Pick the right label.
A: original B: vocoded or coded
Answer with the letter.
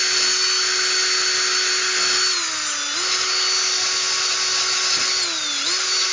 A